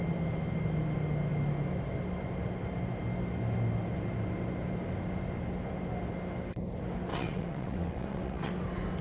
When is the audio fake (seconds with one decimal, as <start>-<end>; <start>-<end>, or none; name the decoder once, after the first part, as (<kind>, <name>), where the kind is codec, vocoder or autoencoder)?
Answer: 7.1-8.5 (vocoder, WaveNeXt)